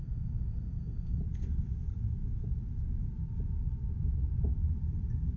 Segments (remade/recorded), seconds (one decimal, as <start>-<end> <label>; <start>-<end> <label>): 0.0-1.2 remade; 1.2-5.4 recorded